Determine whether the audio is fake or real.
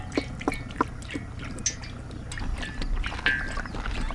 real